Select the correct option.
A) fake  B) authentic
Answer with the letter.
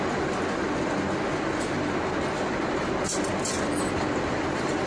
B